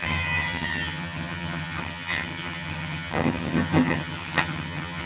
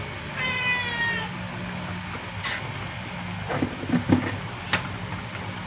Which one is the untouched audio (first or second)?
second